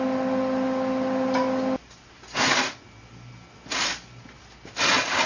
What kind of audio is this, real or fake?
real